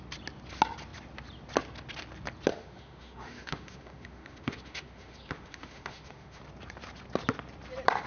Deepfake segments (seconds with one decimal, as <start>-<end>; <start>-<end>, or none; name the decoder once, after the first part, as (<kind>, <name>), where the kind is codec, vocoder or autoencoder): 2.5-6.4 (autoencoder, DAC-VAE)